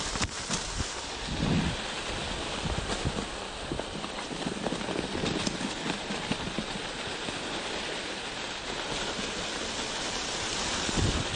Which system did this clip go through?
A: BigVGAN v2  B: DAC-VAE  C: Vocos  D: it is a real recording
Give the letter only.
D